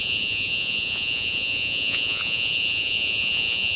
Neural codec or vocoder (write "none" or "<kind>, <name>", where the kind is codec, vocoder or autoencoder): vocoder, Vocos